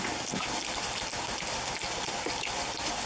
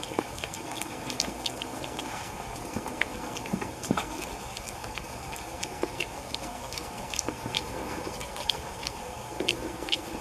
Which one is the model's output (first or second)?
second